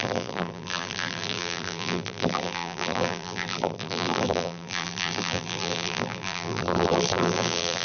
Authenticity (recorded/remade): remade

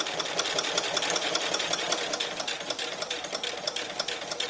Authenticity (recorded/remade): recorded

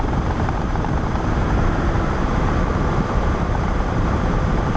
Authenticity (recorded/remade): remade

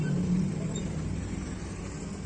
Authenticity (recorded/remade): remade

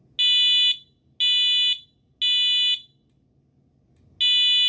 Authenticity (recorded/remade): recorded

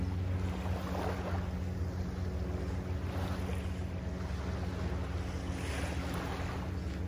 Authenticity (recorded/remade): recorded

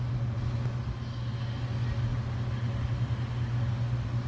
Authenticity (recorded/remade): recorded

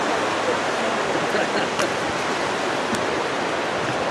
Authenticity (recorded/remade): recorded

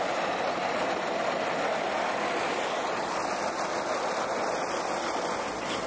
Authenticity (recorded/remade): remade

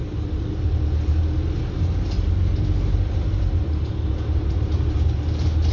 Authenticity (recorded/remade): remade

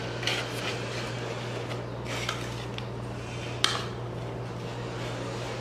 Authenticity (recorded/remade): recorded